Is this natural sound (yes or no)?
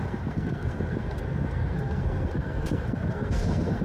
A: no